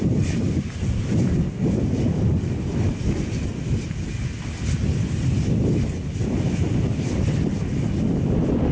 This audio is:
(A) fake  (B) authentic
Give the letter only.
B